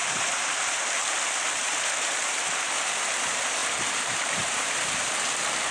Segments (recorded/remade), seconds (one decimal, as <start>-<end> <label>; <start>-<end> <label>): 0.0-3.6 recorded; 3.6-5.2 remade; 5.2-5.7 recorded